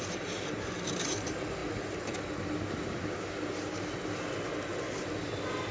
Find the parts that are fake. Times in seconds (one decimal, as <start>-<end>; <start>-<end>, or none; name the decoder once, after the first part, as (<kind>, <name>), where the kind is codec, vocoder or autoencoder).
0.0-1.6 (vocoder, BigVGAN v2); 5.0-5.7

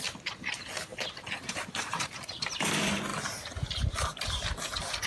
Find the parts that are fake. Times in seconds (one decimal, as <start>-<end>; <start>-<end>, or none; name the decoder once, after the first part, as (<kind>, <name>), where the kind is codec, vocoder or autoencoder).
0.9-2.6 (vocoder, BigVGAN v2)

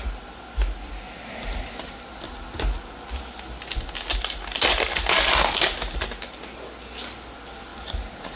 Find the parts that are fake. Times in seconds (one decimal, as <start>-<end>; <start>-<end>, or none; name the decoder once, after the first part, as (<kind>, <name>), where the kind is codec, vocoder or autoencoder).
7.7-8.4 (vocoder, BigVGAN v2)

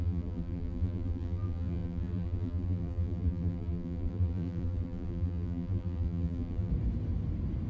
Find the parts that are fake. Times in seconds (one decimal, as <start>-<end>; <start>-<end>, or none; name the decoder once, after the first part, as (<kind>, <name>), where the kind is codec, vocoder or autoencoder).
0.0-6.7 (vocoder, BigVGAN v2)